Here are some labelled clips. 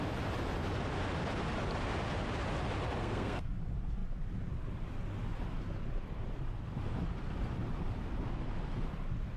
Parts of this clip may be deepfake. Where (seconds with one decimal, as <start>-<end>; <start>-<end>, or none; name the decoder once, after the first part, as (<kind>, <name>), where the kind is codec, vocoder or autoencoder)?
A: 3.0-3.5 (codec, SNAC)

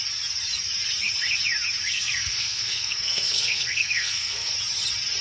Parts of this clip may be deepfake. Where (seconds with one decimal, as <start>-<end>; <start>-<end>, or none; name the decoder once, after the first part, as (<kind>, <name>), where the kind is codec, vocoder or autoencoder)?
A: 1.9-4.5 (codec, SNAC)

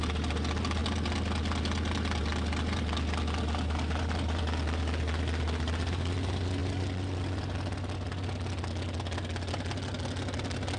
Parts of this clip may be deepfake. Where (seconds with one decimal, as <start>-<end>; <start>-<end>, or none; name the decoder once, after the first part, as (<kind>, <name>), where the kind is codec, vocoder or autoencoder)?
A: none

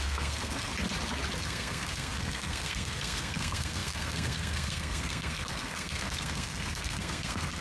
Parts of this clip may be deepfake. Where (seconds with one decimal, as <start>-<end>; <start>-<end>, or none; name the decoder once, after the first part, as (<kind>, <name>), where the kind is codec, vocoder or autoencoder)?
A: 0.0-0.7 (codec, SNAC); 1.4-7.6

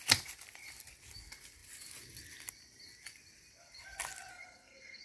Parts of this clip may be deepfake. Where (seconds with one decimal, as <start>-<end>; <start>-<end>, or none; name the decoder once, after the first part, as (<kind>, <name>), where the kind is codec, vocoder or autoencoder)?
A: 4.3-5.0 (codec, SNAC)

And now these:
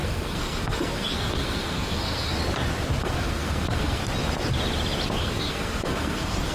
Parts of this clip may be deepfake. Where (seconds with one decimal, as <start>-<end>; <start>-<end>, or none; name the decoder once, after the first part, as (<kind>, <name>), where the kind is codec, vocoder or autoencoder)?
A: 0.0-2.3 (codec, SNAC); 3.0-4.0; 5.2-6.5

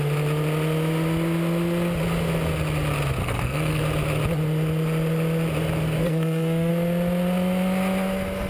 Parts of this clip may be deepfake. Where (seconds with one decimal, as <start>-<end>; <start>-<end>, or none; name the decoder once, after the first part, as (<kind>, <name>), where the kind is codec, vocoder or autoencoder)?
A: 3.2-3.8 (codec, SNAC); 6.0-6.7